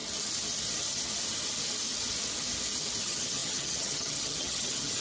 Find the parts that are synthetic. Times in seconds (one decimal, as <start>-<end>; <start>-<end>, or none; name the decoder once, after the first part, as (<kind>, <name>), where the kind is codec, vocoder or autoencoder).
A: 3.0-5.0 (vocoder, HiFi-GAN)